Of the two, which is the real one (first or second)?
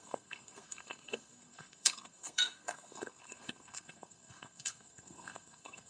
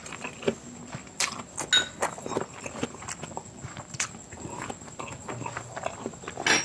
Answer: second